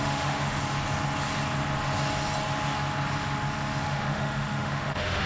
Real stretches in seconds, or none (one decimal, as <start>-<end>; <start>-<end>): 0.6-3.8